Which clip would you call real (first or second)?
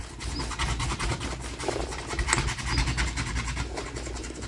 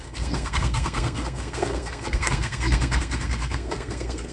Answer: first